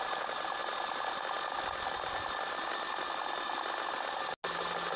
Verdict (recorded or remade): recorded